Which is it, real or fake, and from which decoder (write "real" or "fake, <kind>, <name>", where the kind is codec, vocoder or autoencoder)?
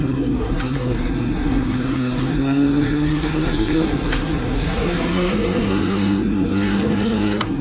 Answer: fake, codec, SNAC